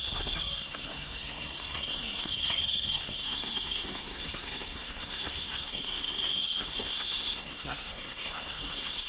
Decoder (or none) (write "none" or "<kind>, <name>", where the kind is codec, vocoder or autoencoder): codec, SNAC